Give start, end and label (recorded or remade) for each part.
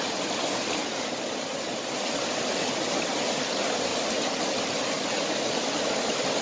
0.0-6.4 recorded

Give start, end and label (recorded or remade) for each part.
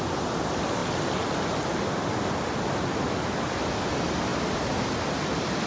0.0-5.7 recorded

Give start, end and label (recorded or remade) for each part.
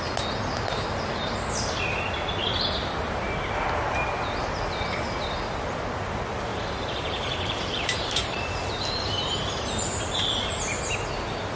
0.0-6.5 recorded; 6.5-10.4 remade; 10.4-11.6 recorded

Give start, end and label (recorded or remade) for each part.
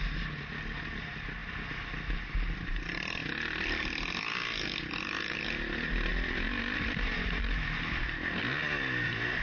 0.0-6.1 recorded; 6.1-8.4 remade; 8.4-9.4 recorded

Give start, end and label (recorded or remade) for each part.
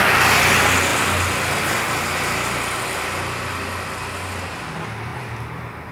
0.0-5.9 recorded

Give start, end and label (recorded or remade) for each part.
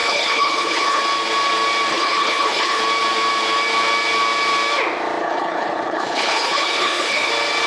0.0-1.0 remade; 1.0-1.9 recorded; 1.9-2.8 remade; 2.8-5.2 recorded; 5.2-7.3 remade; 7.3-7.7 recorded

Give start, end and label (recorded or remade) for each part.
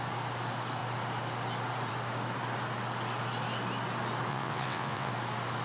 0.0-4.3 recorded; 4.3-5.1 remade; 5.1-5.6 recorded